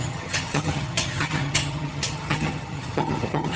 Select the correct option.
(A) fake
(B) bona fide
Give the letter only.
A